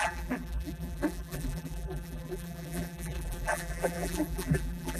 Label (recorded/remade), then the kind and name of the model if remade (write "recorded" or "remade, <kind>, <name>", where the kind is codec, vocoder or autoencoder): remade, vocoder, BigVGAN v2